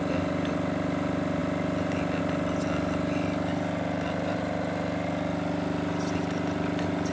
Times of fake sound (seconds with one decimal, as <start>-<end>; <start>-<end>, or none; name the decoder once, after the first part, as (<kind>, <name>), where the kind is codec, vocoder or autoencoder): none